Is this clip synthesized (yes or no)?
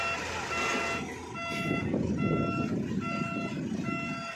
no